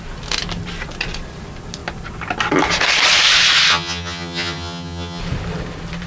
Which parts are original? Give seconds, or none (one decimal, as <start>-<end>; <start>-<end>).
0.0-3.7; 5.2-6.1